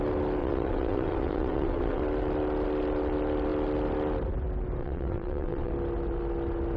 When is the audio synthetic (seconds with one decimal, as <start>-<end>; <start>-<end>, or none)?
0.4-2.0; 4.8-5.7